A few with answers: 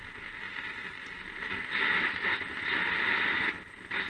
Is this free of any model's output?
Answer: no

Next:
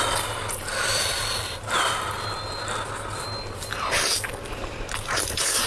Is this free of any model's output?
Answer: yes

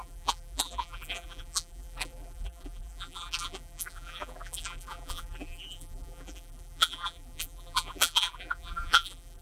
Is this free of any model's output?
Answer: no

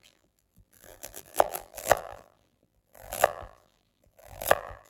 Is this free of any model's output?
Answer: no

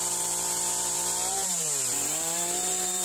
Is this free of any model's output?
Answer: no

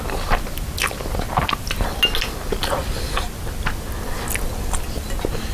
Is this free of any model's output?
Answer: yes